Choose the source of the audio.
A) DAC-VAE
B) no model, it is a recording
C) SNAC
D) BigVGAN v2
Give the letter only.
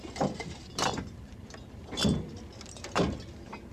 D